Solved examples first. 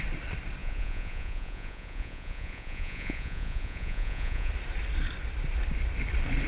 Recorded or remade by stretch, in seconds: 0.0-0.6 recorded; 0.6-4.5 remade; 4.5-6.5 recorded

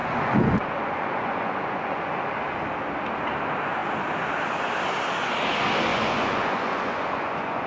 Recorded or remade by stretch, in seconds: 0.0-2.1 remade; 2.1-5.9 recorded; 5.9-7.7 remade

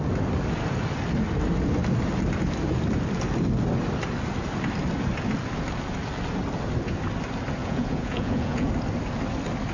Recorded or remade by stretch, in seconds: 0.0-7.6 recorded; 7.6-8.7 remade; 8.7-9.7 recorded